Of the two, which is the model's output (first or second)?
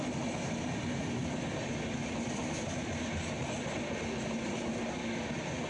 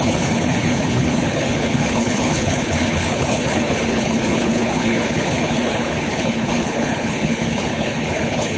second